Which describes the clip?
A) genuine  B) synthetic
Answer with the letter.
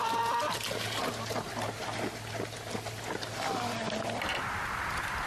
A